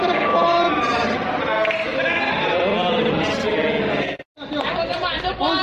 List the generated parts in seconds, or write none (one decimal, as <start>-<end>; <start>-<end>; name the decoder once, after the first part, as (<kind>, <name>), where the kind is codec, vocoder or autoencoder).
none